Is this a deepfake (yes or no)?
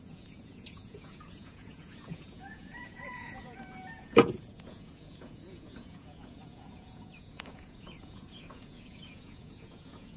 yes